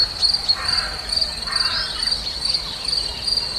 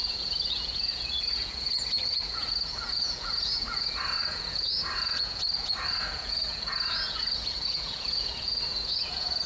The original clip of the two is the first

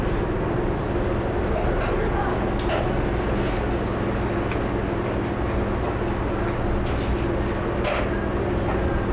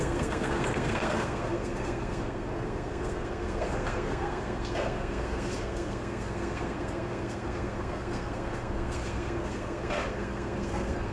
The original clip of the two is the first